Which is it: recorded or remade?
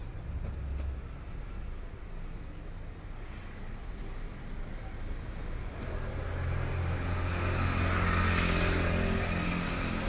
recorded